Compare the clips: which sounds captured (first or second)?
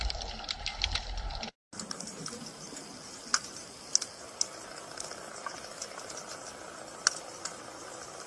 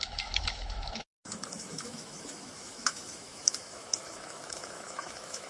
first